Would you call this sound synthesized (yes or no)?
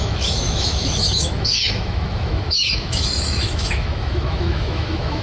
yes